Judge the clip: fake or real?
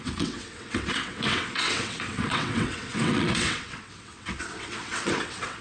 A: fake